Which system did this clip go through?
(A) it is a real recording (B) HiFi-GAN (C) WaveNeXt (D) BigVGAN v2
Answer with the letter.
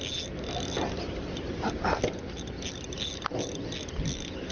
A